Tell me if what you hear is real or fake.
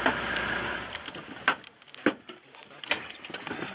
real